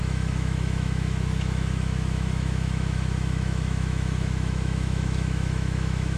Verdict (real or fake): fake